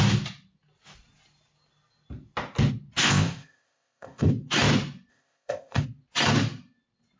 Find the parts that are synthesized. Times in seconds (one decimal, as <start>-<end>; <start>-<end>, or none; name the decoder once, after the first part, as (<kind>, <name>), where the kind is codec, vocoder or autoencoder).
3.0-4.3 (codec, ZipCodec); 5.1-5.8